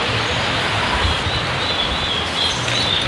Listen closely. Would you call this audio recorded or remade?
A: recorded